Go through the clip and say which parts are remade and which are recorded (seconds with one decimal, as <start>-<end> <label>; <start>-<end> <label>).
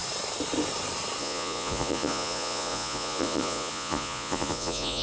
0.0-1.2 recorded; 1.2-5.0 remade